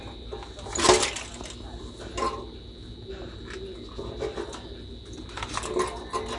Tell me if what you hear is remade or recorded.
recorded